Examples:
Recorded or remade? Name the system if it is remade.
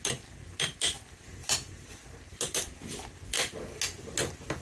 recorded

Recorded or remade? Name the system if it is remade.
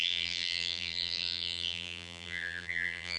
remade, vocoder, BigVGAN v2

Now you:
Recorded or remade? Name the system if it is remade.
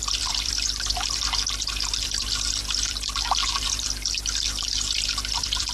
remade, vocoder, BigVGAN v2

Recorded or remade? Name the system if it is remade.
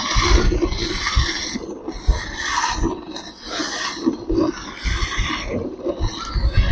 recorded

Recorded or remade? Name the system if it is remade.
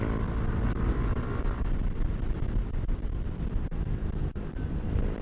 recorded